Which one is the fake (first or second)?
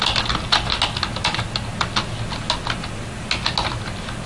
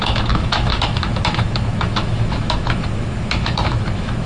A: second